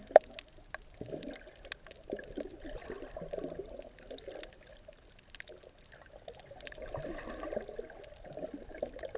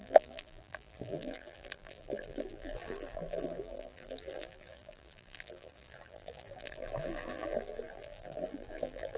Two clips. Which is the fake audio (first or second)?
second